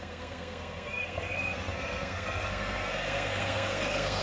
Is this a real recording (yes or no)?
no